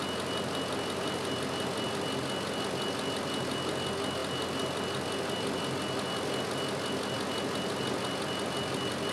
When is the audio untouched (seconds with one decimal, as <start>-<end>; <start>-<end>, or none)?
0.0-9.1